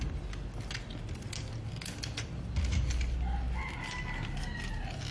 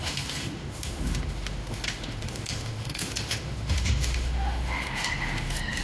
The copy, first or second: second